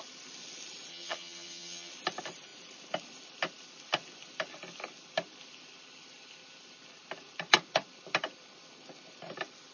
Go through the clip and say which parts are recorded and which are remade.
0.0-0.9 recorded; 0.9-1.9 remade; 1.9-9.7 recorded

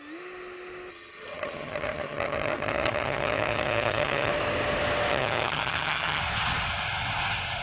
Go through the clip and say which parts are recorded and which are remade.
0.0-0.9 recorded; 0.9-4.3 remade; 4.3-5.1 recorded; 5.1-6.2 remade; 6.2-7.6 recorded

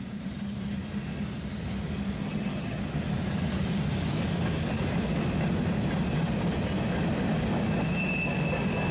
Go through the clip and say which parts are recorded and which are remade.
0.0-2.2 recorded; 2.2-2.8 remade; 2.8-8.9 recorded

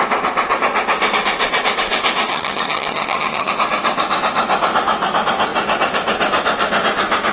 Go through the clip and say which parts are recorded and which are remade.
0.0-2.3 recorded; 2.3-3.5 remade; 3.5-7.3 recorded

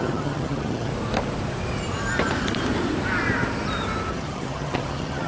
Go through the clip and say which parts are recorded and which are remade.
0.0-0.9 remade; 0.9-4.1 recorded; 4.1-5.3 remade